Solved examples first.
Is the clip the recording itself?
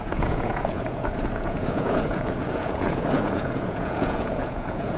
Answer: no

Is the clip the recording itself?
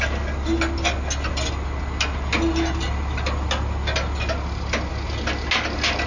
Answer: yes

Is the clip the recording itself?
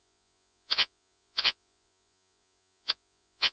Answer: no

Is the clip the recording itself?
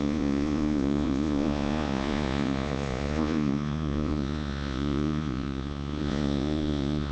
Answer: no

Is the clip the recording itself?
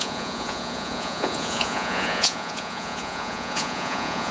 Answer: no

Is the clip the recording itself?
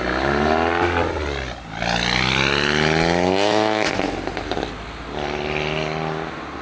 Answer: yes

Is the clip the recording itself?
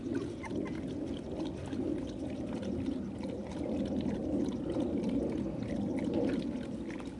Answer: yes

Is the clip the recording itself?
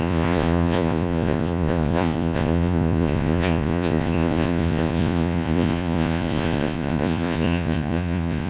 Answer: no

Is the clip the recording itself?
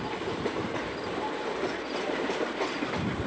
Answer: yes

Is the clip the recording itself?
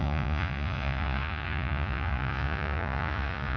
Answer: no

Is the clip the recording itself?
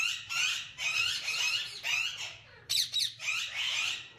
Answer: yes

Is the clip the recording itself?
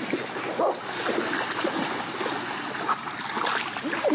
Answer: yes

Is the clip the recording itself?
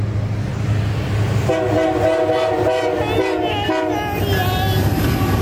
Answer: yes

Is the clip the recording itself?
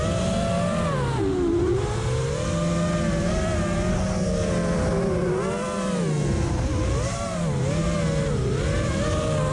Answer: yes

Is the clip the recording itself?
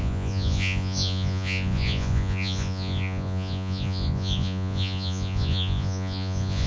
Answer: no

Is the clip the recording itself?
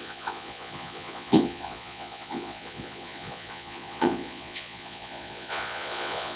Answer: no